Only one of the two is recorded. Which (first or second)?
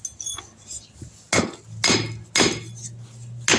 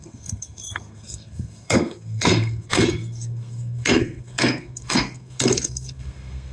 first